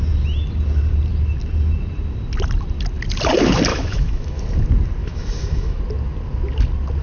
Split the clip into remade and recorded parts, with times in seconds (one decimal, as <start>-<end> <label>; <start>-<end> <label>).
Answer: 0.0-3.7 recorded; 3.7-4.4 remade; 4.4-5.0 recorded; 5.0-5.8 remade; 5.8-7.0 recorded